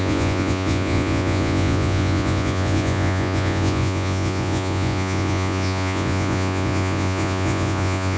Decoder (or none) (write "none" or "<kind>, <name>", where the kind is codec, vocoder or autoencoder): vocoder, Vocos